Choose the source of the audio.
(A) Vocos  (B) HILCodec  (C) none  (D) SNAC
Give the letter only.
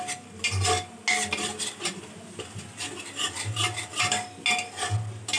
C